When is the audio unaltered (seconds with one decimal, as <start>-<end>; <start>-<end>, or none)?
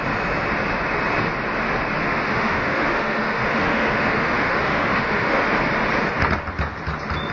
0.0-2.0; 5.4-7.3